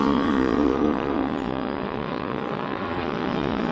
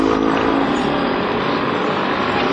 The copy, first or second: first